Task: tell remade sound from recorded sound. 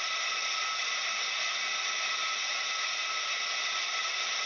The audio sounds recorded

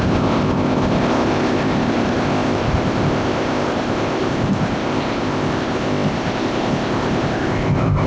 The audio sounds remade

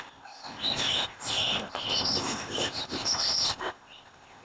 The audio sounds remade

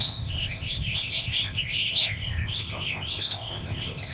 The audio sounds remade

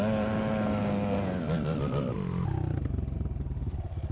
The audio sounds recorded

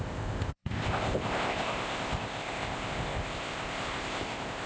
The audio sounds remade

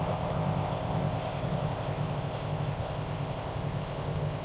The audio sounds remade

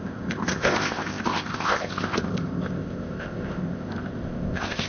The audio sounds remade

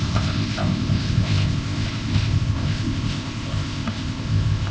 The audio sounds remade